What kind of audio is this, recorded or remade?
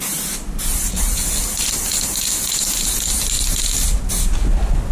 recorded